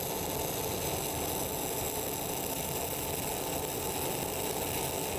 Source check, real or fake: real